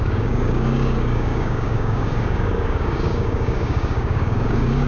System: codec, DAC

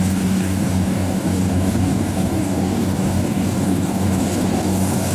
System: codec, DAC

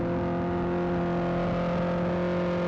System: none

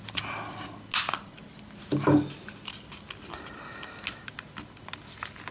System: none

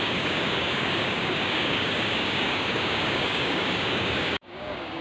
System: codec, DAC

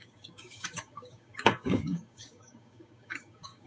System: codec, DAC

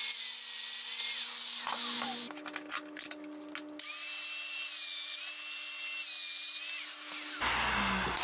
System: none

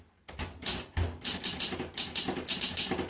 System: none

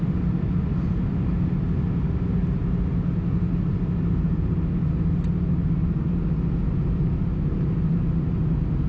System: none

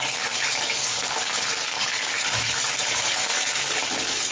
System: codec, DAC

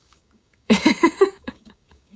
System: codec, DAC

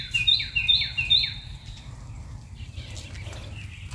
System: none